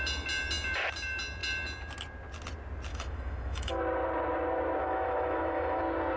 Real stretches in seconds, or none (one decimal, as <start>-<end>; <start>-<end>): 0.0-2.9; 3.8-4.8; 5.8-6.2